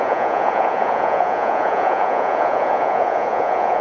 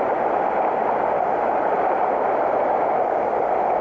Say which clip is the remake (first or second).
first